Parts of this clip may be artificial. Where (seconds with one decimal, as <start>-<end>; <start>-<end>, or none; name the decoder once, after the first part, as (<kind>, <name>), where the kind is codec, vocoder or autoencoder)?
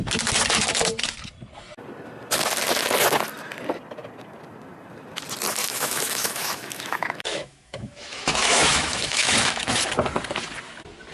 5.6-9.8 (autoencoder, DAC-VAE)